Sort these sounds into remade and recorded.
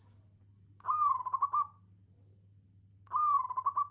recorded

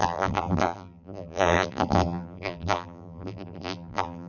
remade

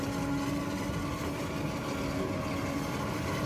recorded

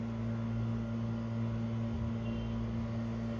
recorded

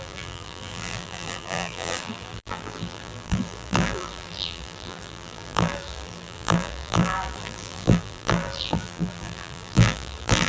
remade